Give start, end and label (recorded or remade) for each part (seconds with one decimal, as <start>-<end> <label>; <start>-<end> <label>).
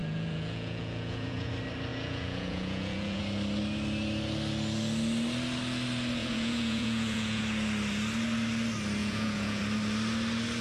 0.0-1.5 remade; 1.5-1.9 recorded; 1.9-3.2 remade; 3.2-6.2 recorded; 6.2-7.4 remade; 7.4-9.0 recorded; 9.0-9.6 remade; 9.6-10.6 recorded